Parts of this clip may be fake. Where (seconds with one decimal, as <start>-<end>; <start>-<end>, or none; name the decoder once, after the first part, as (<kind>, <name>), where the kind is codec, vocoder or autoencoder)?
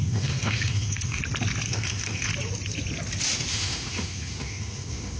0.0-1.2 (autoencoder, DAC-VAE); 1.7-2.3; 3.5-5.2